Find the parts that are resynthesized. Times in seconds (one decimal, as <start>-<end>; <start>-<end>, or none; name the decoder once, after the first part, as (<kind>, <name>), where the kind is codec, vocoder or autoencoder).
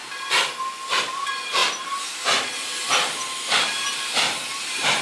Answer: 1.0-1.6 (vocoder, BigVGAN v2); 4.6-5.0